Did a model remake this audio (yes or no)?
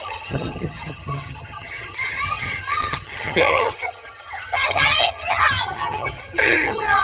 yes